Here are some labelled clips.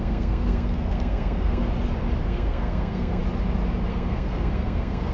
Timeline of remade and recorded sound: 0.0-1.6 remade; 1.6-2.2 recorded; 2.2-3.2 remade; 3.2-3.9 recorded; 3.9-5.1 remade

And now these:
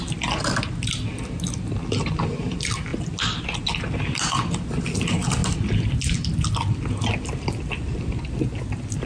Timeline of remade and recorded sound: 0.0-9.1 recorded

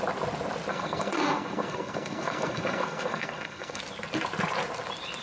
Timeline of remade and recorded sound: 0.0-0.7 recorded; 0.7-3.8 remade; 3.8-5.2 recorded